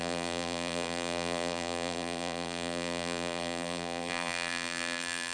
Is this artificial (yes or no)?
yes